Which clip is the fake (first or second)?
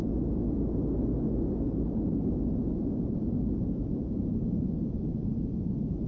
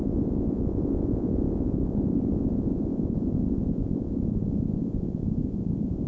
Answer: second